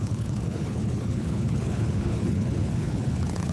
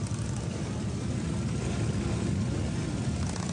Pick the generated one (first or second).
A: first